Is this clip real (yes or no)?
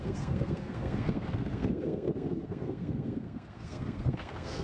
no